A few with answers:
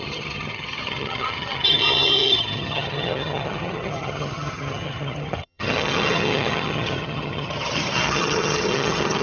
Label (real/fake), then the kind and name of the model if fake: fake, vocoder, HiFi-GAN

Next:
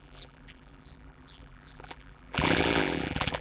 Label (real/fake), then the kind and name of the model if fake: fake, vocoder, BigVGAN v2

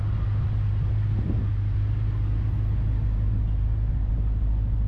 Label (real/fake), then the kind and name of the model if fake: real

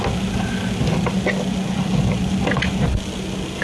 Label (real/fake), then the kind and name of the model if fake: real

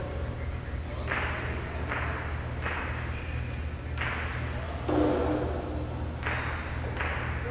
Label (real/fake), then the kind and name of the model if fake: real